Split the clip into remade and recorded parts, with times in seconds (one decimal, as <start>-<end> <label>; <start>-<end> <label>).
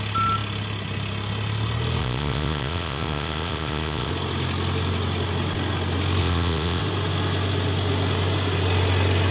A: 0.0-2.0 recorded; 2.0-4.1 remade; 4.1-6.2 recorded; 6.2-6.8 remade; 6.8-9.3 recorded